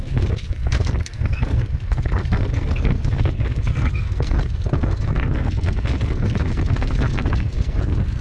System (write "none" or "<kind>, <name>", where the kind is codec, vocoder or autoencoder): codec, SNAC